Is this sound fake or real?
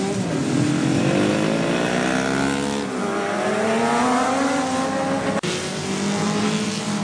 real